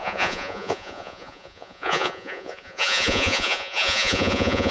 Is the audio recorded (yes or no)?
no